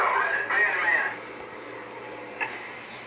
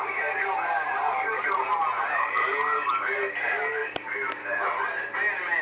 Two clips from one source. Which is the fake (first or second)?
first